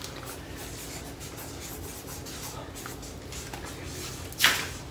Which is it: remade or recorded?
recorded